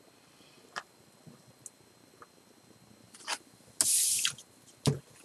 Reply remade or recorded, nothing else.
recorded